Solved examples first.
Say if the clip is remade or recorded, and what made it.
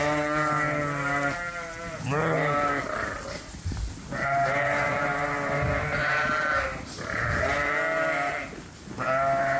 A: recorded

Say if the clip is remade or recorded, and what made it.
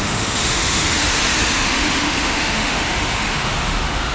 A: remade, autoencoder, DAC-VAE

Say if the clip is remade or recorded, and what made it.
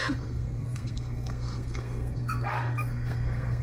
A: remade, codec, SNAC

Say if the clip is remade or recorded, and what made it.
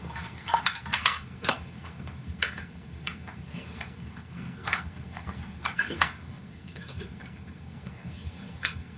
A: remade, codec, SNAC